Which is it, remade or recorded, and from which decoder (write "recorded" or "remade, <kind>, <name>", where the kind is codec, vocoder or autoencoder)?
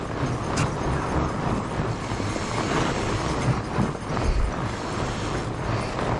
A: recorded